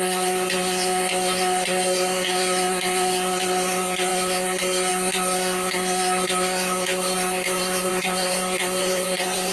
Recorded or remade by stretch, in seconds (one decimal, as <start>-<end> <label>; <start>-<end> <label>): 0.0-9.5 remade